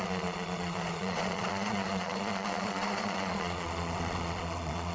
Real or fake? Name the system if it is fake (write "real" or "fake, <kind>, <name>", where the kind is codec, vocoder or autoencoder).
fake, vocoder, Vocos